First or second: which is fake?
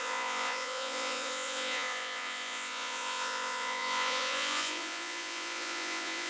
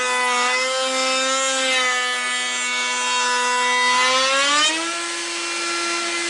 first